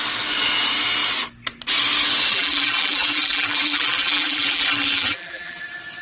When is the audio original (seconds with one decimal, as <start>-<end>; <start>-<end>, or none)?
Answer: 0.0-2.3; 5.6-6.0